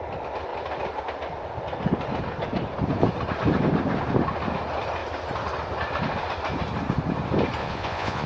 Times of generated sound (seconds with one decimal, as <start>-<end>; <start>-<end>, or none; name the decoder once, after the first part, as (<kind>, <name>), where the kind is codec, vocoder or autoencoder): 7.6-8.3 (vocoder, Vocos)